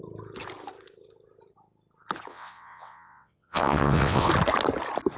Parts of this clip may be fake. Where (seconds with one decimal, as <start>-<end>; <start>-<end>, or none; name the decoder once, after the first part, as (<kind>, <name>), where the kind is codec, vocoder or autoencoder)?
2.3-4.3 (vocoder, WaveNeXt)